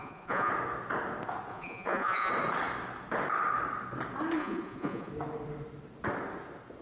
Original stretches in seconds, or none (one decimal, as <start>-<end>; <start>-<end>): 0.5-1.5; 2.3-4.4; 5.1-6.8